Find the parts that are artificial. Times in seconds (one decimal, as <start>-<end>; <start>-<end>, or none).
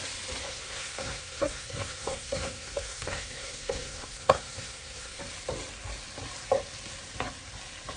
0.4-5.2